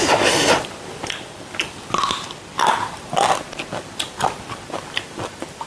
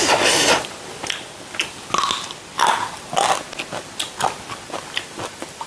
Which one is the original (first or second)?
second